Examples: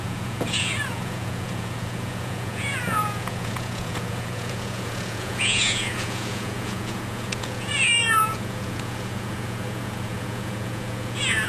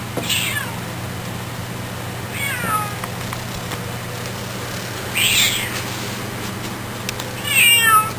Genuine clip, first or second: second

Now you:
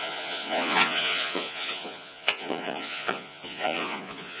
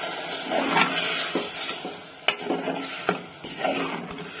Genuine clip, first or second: second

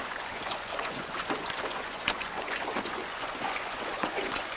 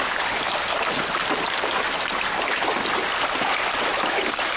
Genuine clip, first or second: second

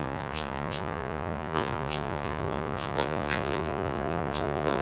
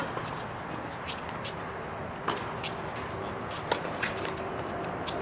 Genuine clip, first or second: second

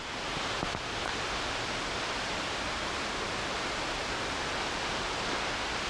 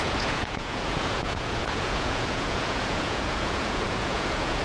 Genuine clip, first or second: first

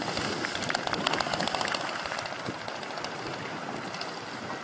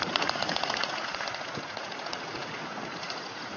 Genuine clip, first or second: first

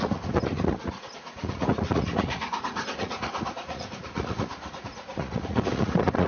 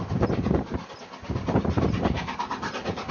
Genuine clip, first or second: second